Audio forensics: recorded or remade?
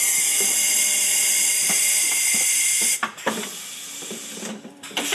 remade